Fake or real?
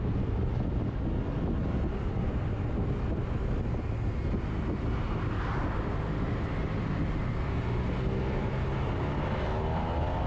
real